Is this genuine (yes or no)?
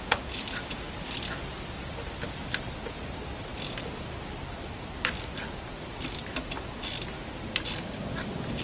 yes